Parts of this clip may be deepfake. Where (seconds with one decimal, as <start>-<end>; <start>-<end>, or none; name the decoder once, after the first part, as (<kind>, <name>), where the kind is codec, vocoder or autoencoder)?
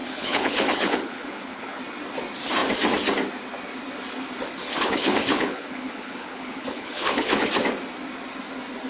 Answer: 0.0-1.8 (codec, HILCodec); 4.6-7.5